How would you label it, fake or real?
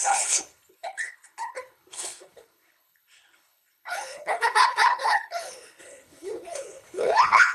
fake